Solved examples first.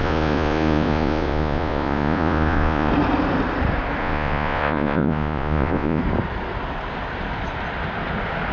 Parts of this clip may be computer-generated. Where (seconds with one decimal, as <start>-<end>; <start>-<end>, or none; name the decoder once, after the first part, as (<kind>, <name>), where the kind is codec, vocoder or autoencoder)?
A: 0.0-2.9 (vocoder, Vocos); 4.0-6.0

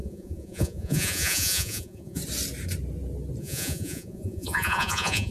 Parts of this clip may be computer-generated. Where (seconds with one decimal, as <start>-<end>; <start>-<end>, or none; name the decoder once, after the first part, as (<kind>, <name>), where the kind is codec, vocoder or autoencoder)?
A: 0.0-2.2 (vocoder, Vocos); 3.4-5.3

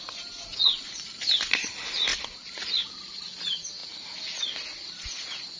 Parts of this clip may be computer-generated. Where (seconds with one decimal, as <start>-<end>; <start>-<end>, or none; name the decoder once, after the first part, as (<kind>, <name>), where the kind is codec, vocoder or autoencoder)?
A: 0.5-1.3 (vocoder, Vocos)